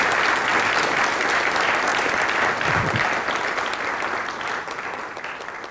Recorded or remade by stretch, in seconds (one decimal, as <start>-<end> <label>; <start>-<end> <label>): 0.0-0.5 recorded; 0.5-1.2 remade; 1.2-1.9 recorded; 1.9-3.8 remade; 3.8-5.7 recorded